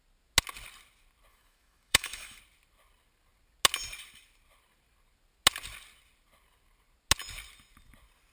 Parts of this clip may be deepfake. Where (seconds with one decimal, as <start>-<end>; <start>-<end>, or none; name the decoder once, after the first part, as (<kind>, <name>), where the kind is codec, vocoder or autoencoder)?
1.3-2.4 (autoencoder, DAC-VAE)